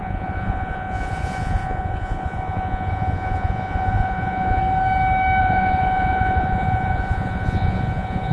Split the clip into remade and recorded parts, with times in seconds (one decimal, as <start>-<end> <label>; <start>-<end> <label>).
0.0-4.6 remade; 4.6-5.4 recorded; 5.4-8.3 remade